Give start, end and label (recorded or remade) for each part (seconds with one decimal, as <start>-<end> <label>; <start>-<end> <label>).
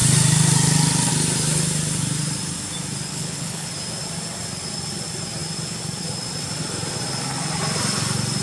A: 0.0-3.1 recorded; 3.1-3.7 remade; 3.7-8.4 recorded